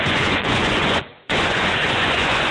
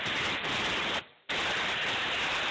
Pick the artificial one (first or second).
first